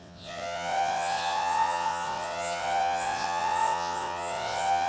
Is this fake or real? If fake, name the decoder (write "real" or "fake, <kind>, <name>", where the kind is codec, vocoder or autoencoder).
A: fake, vocoder, WaveNeXt